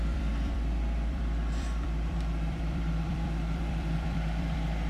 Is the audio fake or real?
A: fake